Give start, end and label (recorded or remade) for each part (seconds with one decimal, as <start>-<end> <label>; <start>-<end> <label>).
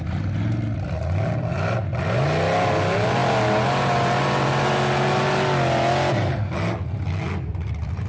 0.0-3.2 recorded; 3.2-4.6 remade; 4.6-7.5 recorded; 7.5-8.1 remade